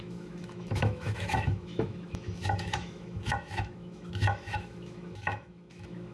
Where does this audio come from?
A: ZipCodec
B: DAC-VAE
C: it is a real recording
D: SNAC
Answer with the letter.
B